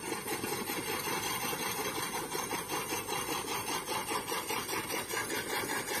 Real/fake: real